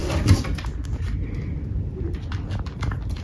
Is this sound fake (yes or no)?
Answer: no